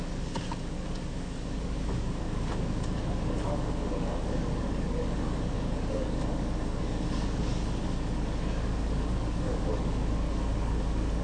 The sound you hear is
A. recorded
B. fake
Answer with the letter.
B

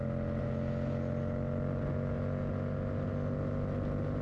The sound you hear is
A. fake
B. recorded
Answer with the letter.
B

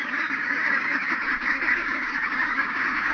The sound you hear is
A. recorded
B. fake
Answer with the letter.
B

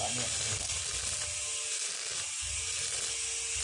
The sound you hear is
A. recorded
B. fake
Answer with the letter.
A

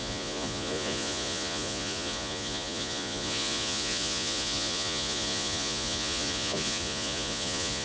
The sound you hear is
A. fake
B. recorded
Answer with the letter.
A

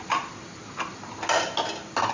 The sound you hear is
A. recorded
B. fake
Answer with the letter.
A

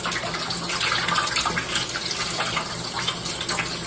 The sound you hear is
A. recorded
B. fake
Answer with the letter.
A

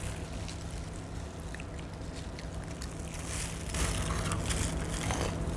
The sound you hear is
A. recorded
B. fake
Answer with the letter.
A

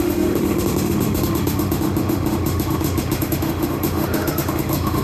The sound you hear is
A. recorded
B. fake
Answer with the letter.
B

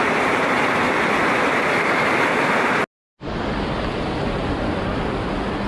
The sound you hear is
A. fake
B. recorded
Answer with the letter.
B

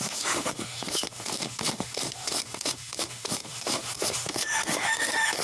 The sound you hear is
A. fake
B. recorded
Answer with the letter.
A